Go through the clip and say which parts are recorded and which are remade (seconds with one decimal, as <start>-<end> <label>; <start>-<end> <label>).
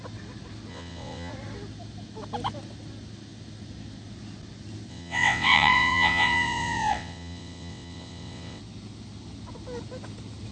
0.0-0.7 recorded; 0.7-1.3 remade; 1.3-4.9 recorded; 4.9-8.6 remade; 8.6-10.5 recorded